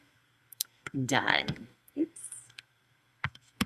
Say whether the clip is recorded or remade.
remade